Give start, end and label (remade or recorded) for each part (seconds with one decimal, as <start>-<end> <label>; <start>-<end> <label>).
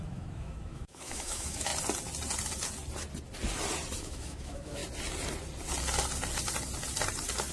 0.0-1.7 remade; 1.7-4.0 recorded; 4.0-4.8 remade; 4.8-7.5 recorded